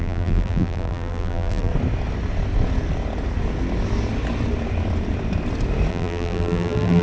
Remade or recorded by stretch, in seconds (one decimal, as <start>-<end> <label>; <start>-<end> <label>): 0.0-1.7 remade; 1.7-5.9 recorded; 5.9-7.0 remade